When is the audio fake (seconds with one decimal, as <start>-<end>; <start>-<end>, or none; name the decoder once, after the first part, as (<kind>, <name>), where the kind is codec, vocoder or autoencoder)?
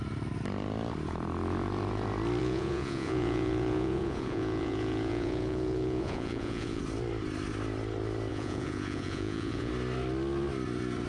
2.4-6.8 (vocoder, Vocos); 8.3-9.7